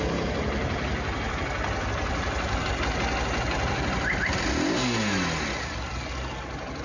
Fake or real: real